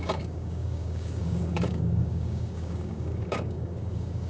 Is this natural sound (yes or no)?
no